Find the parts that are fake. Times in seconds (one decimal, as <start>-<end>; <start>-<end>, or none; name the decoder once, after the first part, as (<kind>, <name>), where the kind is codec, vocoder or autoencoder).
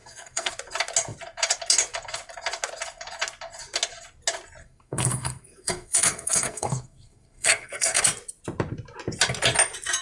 0.0-0.5 (codec, SNAC); 4.6-8.0